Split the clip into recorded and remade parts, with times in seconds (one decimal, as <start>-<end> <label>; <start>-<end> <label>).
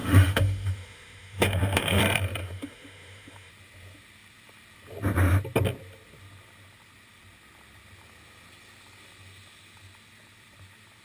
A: 0.0-2.0 remade; 2.0-2.4 recorded; 2.4-3.5 remade; 3.5-11.0 recorded